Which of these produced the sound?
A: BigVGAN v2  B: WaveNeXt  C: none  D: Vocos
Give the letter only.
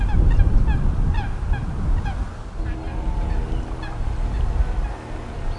C